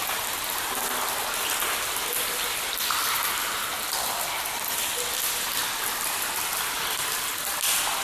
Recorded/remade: recorded